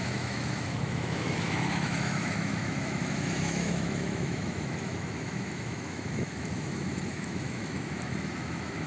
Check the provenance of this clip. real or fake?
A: fake